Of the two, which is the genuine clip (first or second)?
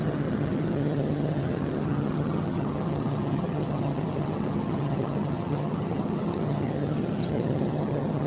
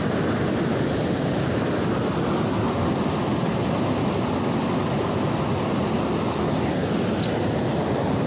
second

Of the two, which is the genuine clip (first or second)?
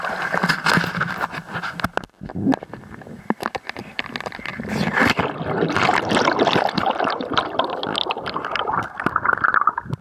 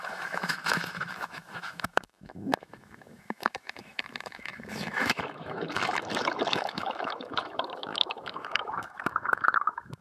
first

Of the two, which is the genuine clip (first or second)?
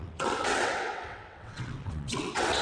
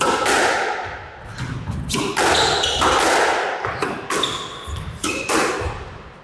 second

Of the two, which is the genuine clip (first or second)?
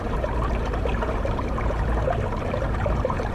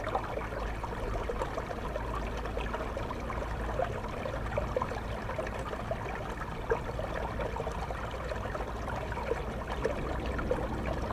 second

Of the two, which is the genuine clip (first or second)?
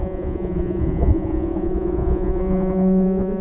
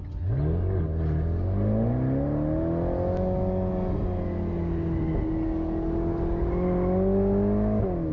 second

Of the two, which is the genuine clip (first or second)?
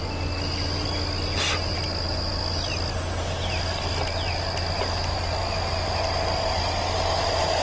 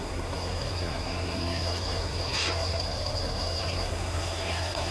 first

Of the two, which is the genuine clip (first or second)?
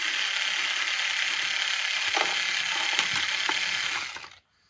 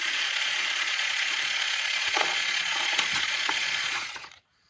first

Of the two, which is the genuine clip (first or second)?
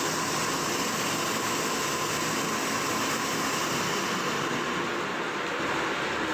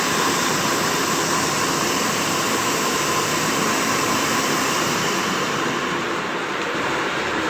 first